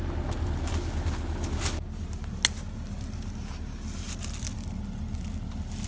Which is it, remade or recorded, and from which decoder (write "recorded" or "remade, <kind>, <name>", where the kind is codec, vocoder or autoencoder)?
recorded